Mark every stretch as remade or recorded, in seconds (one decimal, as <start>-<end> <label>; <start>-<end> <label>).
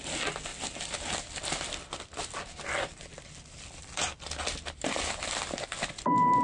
0.0-0.5 recorded; 0.5-1.3 remade; 1.3-3.1 recorded; 3.1-4.2 remade; 4.2-6.4 recorded